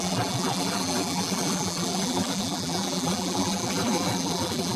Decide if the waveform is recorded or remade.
remade